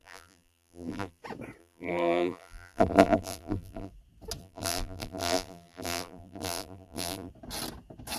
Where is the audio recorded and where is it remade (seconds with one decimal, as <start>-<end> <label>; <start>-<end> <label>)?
0.0-1.2 remade; 1.2-1.6 recorded; 1.6-3.9 remade; 3.9-4.4 recorded; 4.4-7.3 remade; 7.3-8.2 recorded

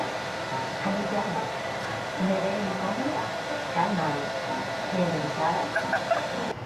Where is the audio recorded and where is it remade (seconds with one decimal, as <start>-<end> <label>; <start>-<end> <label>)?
0.0-0.5 recorded; 0.5-2.4 remade; 2.4-6.7 recorded

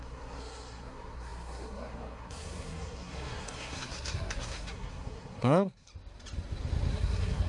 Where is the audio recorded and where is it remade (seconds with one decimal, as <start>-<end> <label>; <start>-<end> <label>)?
0.0-5.9 remade; 5.9-6.9 recorded; 6.9-7.5 remade

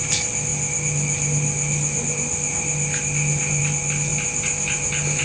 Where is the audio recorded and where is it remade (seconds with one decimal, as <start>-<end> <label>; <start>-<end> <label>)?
0.0-5.2 recorded

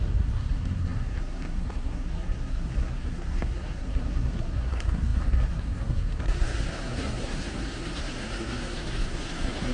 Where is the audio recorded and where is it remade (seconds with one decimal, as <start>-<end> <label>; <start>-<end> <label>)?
0.0-9.7 remade